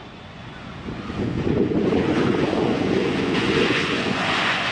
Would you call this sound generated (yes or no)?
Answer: yes